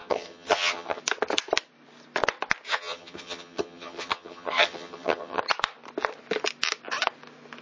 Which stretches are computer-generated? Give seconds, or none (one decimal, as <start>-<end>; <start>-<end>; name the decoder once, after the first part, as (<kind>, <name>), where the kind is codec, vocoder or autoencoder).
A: 0.0-1.0 (vocoder, HiFi-GAN); 2.7-5.4